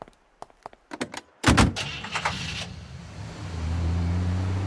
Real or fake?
real